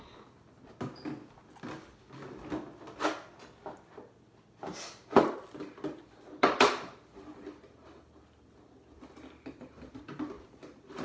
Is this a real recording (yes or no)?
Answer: yes